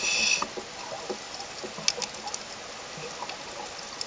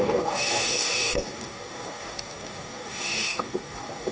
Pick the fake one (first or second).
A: second